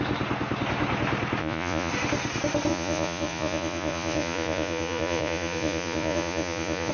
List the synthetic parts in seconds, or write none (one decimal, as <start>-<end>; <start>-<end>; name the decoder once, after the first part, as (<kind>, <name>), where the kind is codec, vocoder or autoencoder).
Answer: 1.4-1.9 (vocoder, Vocos); 2.7-6.9